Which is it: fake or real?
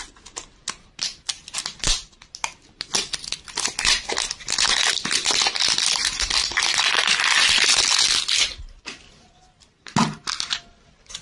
real